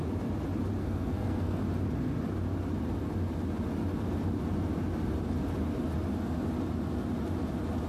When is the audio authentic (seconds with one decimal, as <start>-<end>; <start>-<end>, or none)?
0.0-0.8; 1.6-7.9